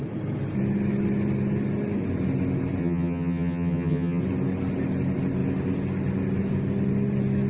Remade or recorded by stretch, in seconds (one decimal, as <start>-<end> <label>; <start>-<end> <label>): 0.0-2.8 recorded; 2.8-4.2 remade; 4.2-7.5 recorded